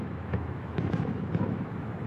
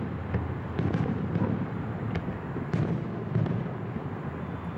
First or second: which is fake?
first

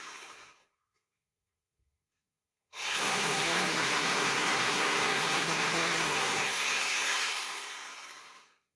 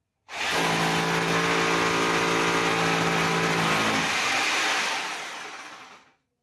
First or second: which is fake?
first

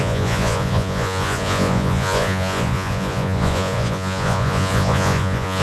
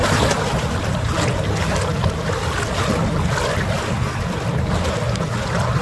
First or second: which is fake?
first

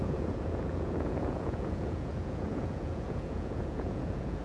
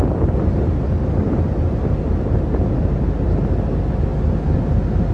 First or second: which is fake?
first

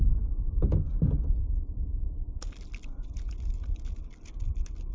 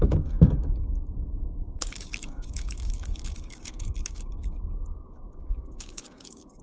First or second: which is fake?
second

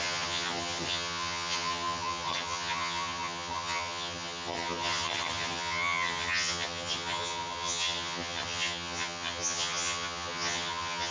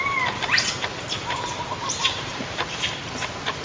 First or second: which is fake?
first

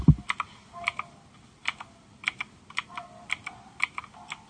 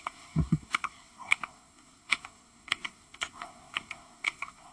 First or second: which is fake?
second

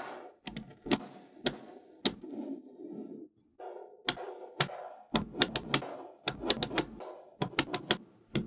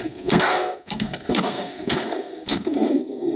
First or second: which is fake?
second